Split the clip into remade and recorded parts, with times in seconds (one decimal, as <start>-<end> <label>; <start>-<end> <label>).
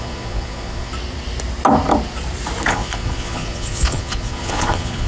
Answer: 0.0-0.9 remade; 0.9-2.7 recorded; 2.7-5.1 remade